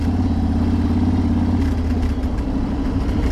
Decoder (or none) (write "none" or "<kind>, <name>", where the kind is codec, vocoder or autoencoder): none